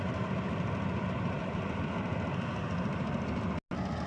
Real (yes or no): yes